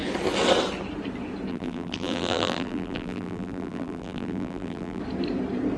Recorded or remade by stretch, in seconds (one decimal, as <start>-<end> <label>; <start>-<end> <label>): 0.0-1.5 recorded; 1.5-5.0 remade; 5.0-5.8 recorded